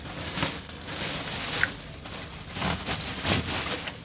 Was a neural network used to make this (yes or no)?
no